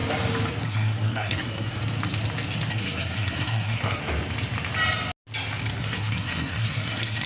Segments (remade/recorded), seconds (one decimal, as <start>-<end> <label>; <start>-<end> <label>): 0.0-0.6 recorded; 0.6-1.8 remade; 1.8-2.7 recorded; 2.7-4.0 remade; 4.0-5.8 recorded; 5.8-7.3 remade

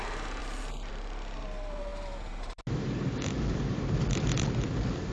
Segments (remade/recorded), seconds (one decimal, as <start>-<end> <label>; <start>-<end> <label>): 0.0-5.1 recorded

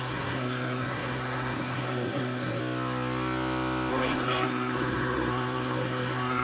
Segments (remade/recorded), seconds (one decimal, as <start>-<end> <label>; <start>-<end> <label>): 0.0-2.6 remade; 2.6-3.9 recorded; 3.9-6.4 remade

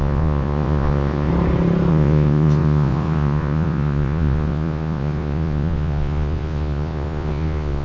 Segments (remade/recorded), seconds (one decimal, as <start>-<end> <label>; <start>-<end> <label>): 0.0-1.3 remade; 1.3-1.9 recorded; 1.9-7.8 remade

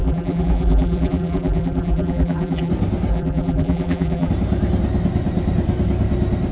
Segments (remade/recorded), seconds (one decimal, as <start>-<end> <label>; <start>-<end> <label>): 0.0-2.7 remade; 2.7-3.1 recorded; 3.1-4.3 remade; 4.3-6.5 recorded

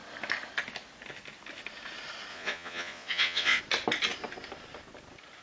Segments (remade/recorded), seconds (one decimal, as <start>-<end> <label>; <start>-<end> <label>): 0.0-2.3 recorded; 2.3-3.6 remade; 3.6-5.4 recorded

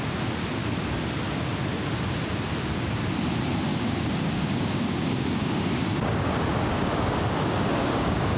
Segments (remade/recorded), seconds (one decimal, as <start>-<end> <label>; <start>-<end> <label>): 0.0-3.7 recorded; 3.7-8.4 remade